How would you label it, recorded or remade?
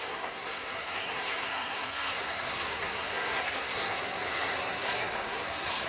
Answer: remade